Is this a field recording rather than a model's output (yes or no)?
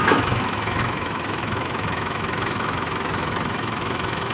no